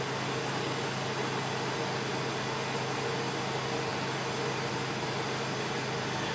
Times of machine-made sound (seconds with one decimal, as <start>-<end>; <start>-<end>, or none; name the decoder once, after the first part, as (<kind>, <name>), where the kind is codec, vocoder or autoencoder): none